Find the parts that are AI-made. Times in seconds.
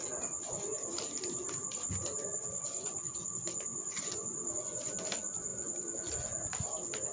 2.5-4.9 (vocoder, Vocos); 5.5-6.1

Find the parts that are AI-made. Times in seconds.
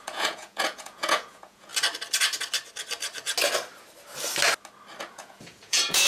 0.0-1.7 (vocoder, Vocos); 5.0-6.1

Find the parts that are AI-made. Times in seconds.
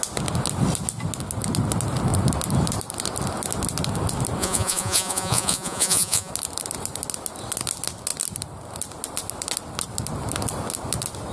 4.4-6.3 (vocoder, Vocos)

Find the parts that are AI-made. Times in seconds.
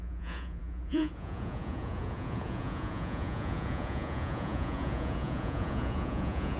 0.0-6.6 (vocoder, Vocos)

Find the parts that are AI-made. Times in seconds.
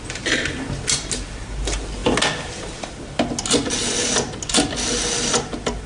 none